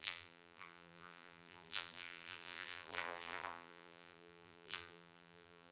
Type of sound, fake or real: fake